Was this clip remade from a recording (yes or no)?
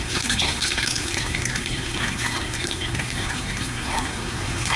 yes